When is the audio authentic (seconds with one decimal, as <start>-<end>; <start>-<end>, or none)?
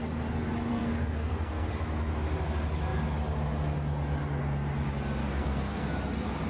0.0-0.7; 1.7-5.2; 6.0-6.5